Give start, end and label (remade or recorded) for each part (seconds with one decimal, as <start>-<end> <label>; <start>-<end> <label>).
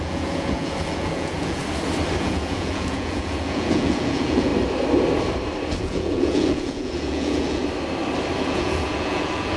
0.0-1.6 remade; 1.6-2.2 recorded; 2.2-4.5 remade; 4.5-5.8 recorded; 5.8-7.6 remade; 7.6-8.4 recorded; 8.4-9.6 remade